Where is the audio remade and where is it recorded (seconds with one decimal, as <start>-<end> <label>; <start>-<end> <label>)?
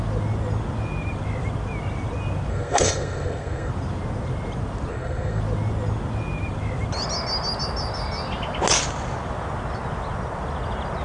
0.0-2.5 recorded; 2.5-3.7 remade; 3.7-4.9 recorded; 4.9-5.4 remade; 5.4-11.0 recorded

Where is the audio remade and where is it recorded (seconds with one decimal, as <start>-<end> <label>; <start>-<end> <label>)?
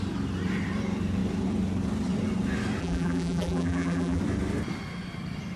0.0-2.8 recorded; 2.8-4.2 remade; 4.2-5.6 recorded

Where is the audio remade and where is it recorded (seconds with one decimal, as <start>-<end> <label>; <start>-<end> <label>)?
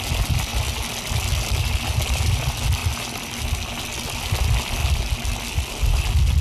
0.0-6.4 recorded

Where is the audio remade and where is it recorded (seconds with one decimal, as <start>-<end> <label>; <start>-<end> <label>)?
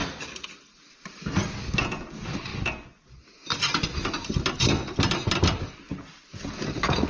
0.0-0.9 remade; 0.9-7.1 recorded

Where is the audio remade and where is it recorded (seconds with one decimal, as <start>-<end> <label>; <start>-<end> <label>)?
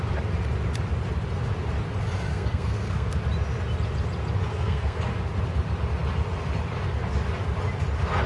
0.0-2.3 recorded; 2.3-3.2 remade; 3.2-4.5 recorded; 4.5-5.0 remade; 5.0-8.3 recorded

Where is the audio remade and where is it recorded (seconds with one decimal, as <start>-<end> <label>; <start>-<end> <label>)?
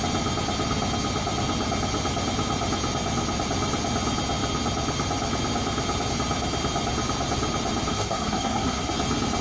0.0-7.9 recorded; 7.9-8.9 remade; 8.9-9.4 recorded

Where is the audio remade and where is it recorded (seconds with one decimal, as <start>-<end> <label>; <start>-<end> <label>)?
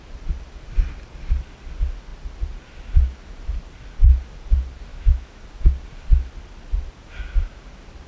0.0-4.9 recorded; 4.9-5.4 remade; 5.4-8.1 recorded